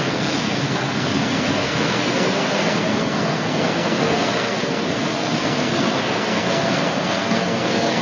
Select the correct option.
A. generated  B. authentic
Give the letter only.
A